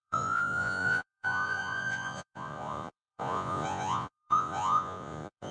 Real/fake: fake